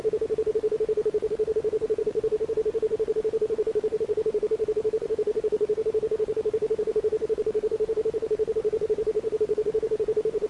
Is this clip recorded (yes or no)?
no